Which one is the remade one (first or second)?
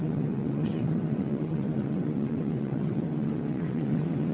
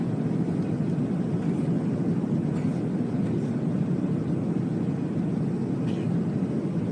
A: first